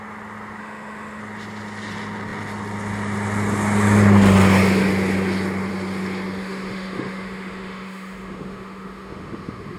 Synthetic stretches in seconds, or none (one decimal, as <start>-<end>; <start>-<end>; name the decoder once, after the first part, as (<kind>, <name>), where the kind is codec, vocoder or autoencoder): 0.6-1.2 (autoencoder, DAC-VAE); 6.4-9.8